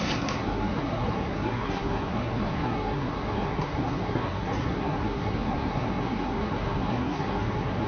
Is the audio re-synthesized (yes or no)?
yes